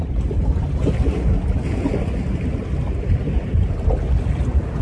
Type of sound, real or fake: real